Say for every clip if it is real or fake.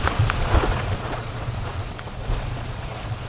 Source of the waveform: fake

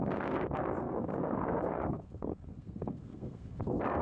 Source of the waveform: fake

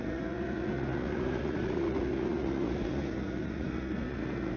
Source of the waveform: fake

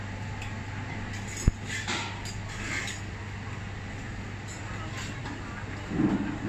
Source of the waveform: real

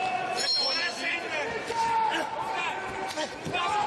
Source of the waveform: real